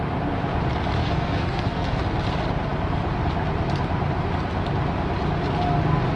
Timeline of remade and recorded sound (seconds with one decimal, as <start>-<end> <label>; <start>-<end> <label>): 0.0-1.0 recorded; 1.0-2.0 remade; 2.0-6.2 recorded